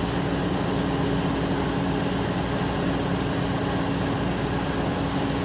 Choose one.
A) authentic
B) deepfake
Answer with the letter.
A